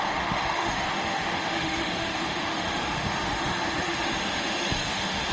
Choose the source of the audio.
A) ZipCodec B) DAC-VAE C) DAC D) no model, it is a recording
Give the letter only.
B